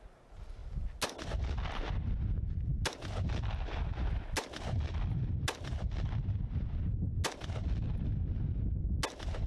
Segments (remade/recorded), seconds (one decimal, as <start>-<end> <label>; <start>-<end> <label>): 0.0-9.5 recorded